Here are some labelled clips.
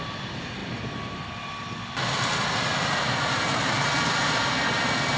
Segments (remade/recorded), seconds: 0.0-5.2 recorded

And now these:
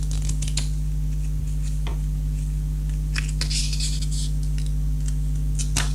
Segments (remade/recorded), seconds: 0.0-5.9 recorded

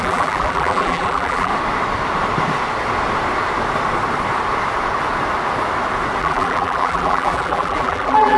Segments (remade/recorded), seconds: 0.0-1.5 remade; 1.5-6.2 recorded; 6.2-8.4 remade

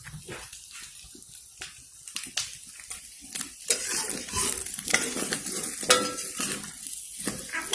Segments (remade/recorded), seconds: 0.0-4.6 recorded; 4.6-5.6 remade; 5.6-7.7 recorded

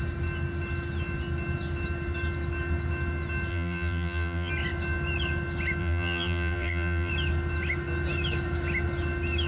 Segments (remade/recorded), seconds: 0.0-3.5 recorded; 3.5-4.5 remade; 4.5-5.8 recorded; 5.8-7.1 remade; 7.1-9.5 recorded

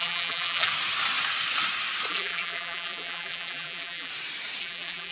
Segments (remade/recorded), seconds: 0.0-0.7 remade; 0.7-2.1 recorded; 2.1-4.1 remade; 4.1-4.6 recorded; 4.6-5.1 remade

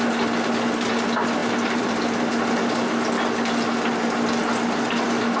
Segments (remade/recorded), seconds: 0.0-1.4 recorded; 1.4-2.3 remade; 2.3-5.4 recorded